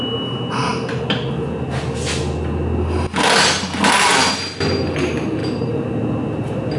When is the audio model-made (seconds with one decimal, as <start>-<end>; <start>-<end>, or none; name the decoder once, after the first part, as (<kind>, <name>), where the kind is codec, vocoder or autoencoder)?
5.4-5.9 (vocoder, BigVGAN v2)